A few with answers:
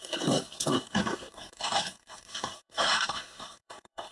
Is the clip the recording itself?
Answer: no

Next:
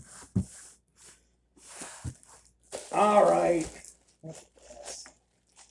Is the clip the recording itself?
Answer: yes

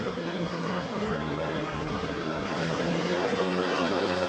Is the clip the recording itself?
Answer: no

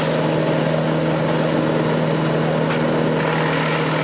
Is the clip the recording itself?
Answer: yes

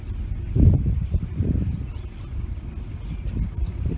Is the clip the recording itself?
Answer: yes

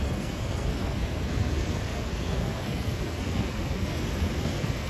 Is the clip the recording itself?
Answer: no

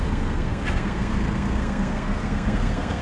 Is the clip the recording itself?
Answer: no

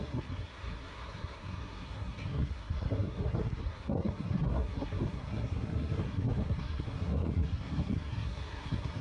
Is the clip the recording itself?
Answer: no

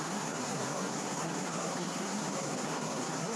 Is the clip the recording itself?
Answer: no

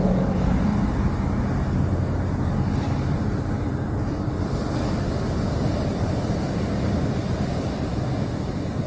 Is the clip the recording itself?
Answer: yes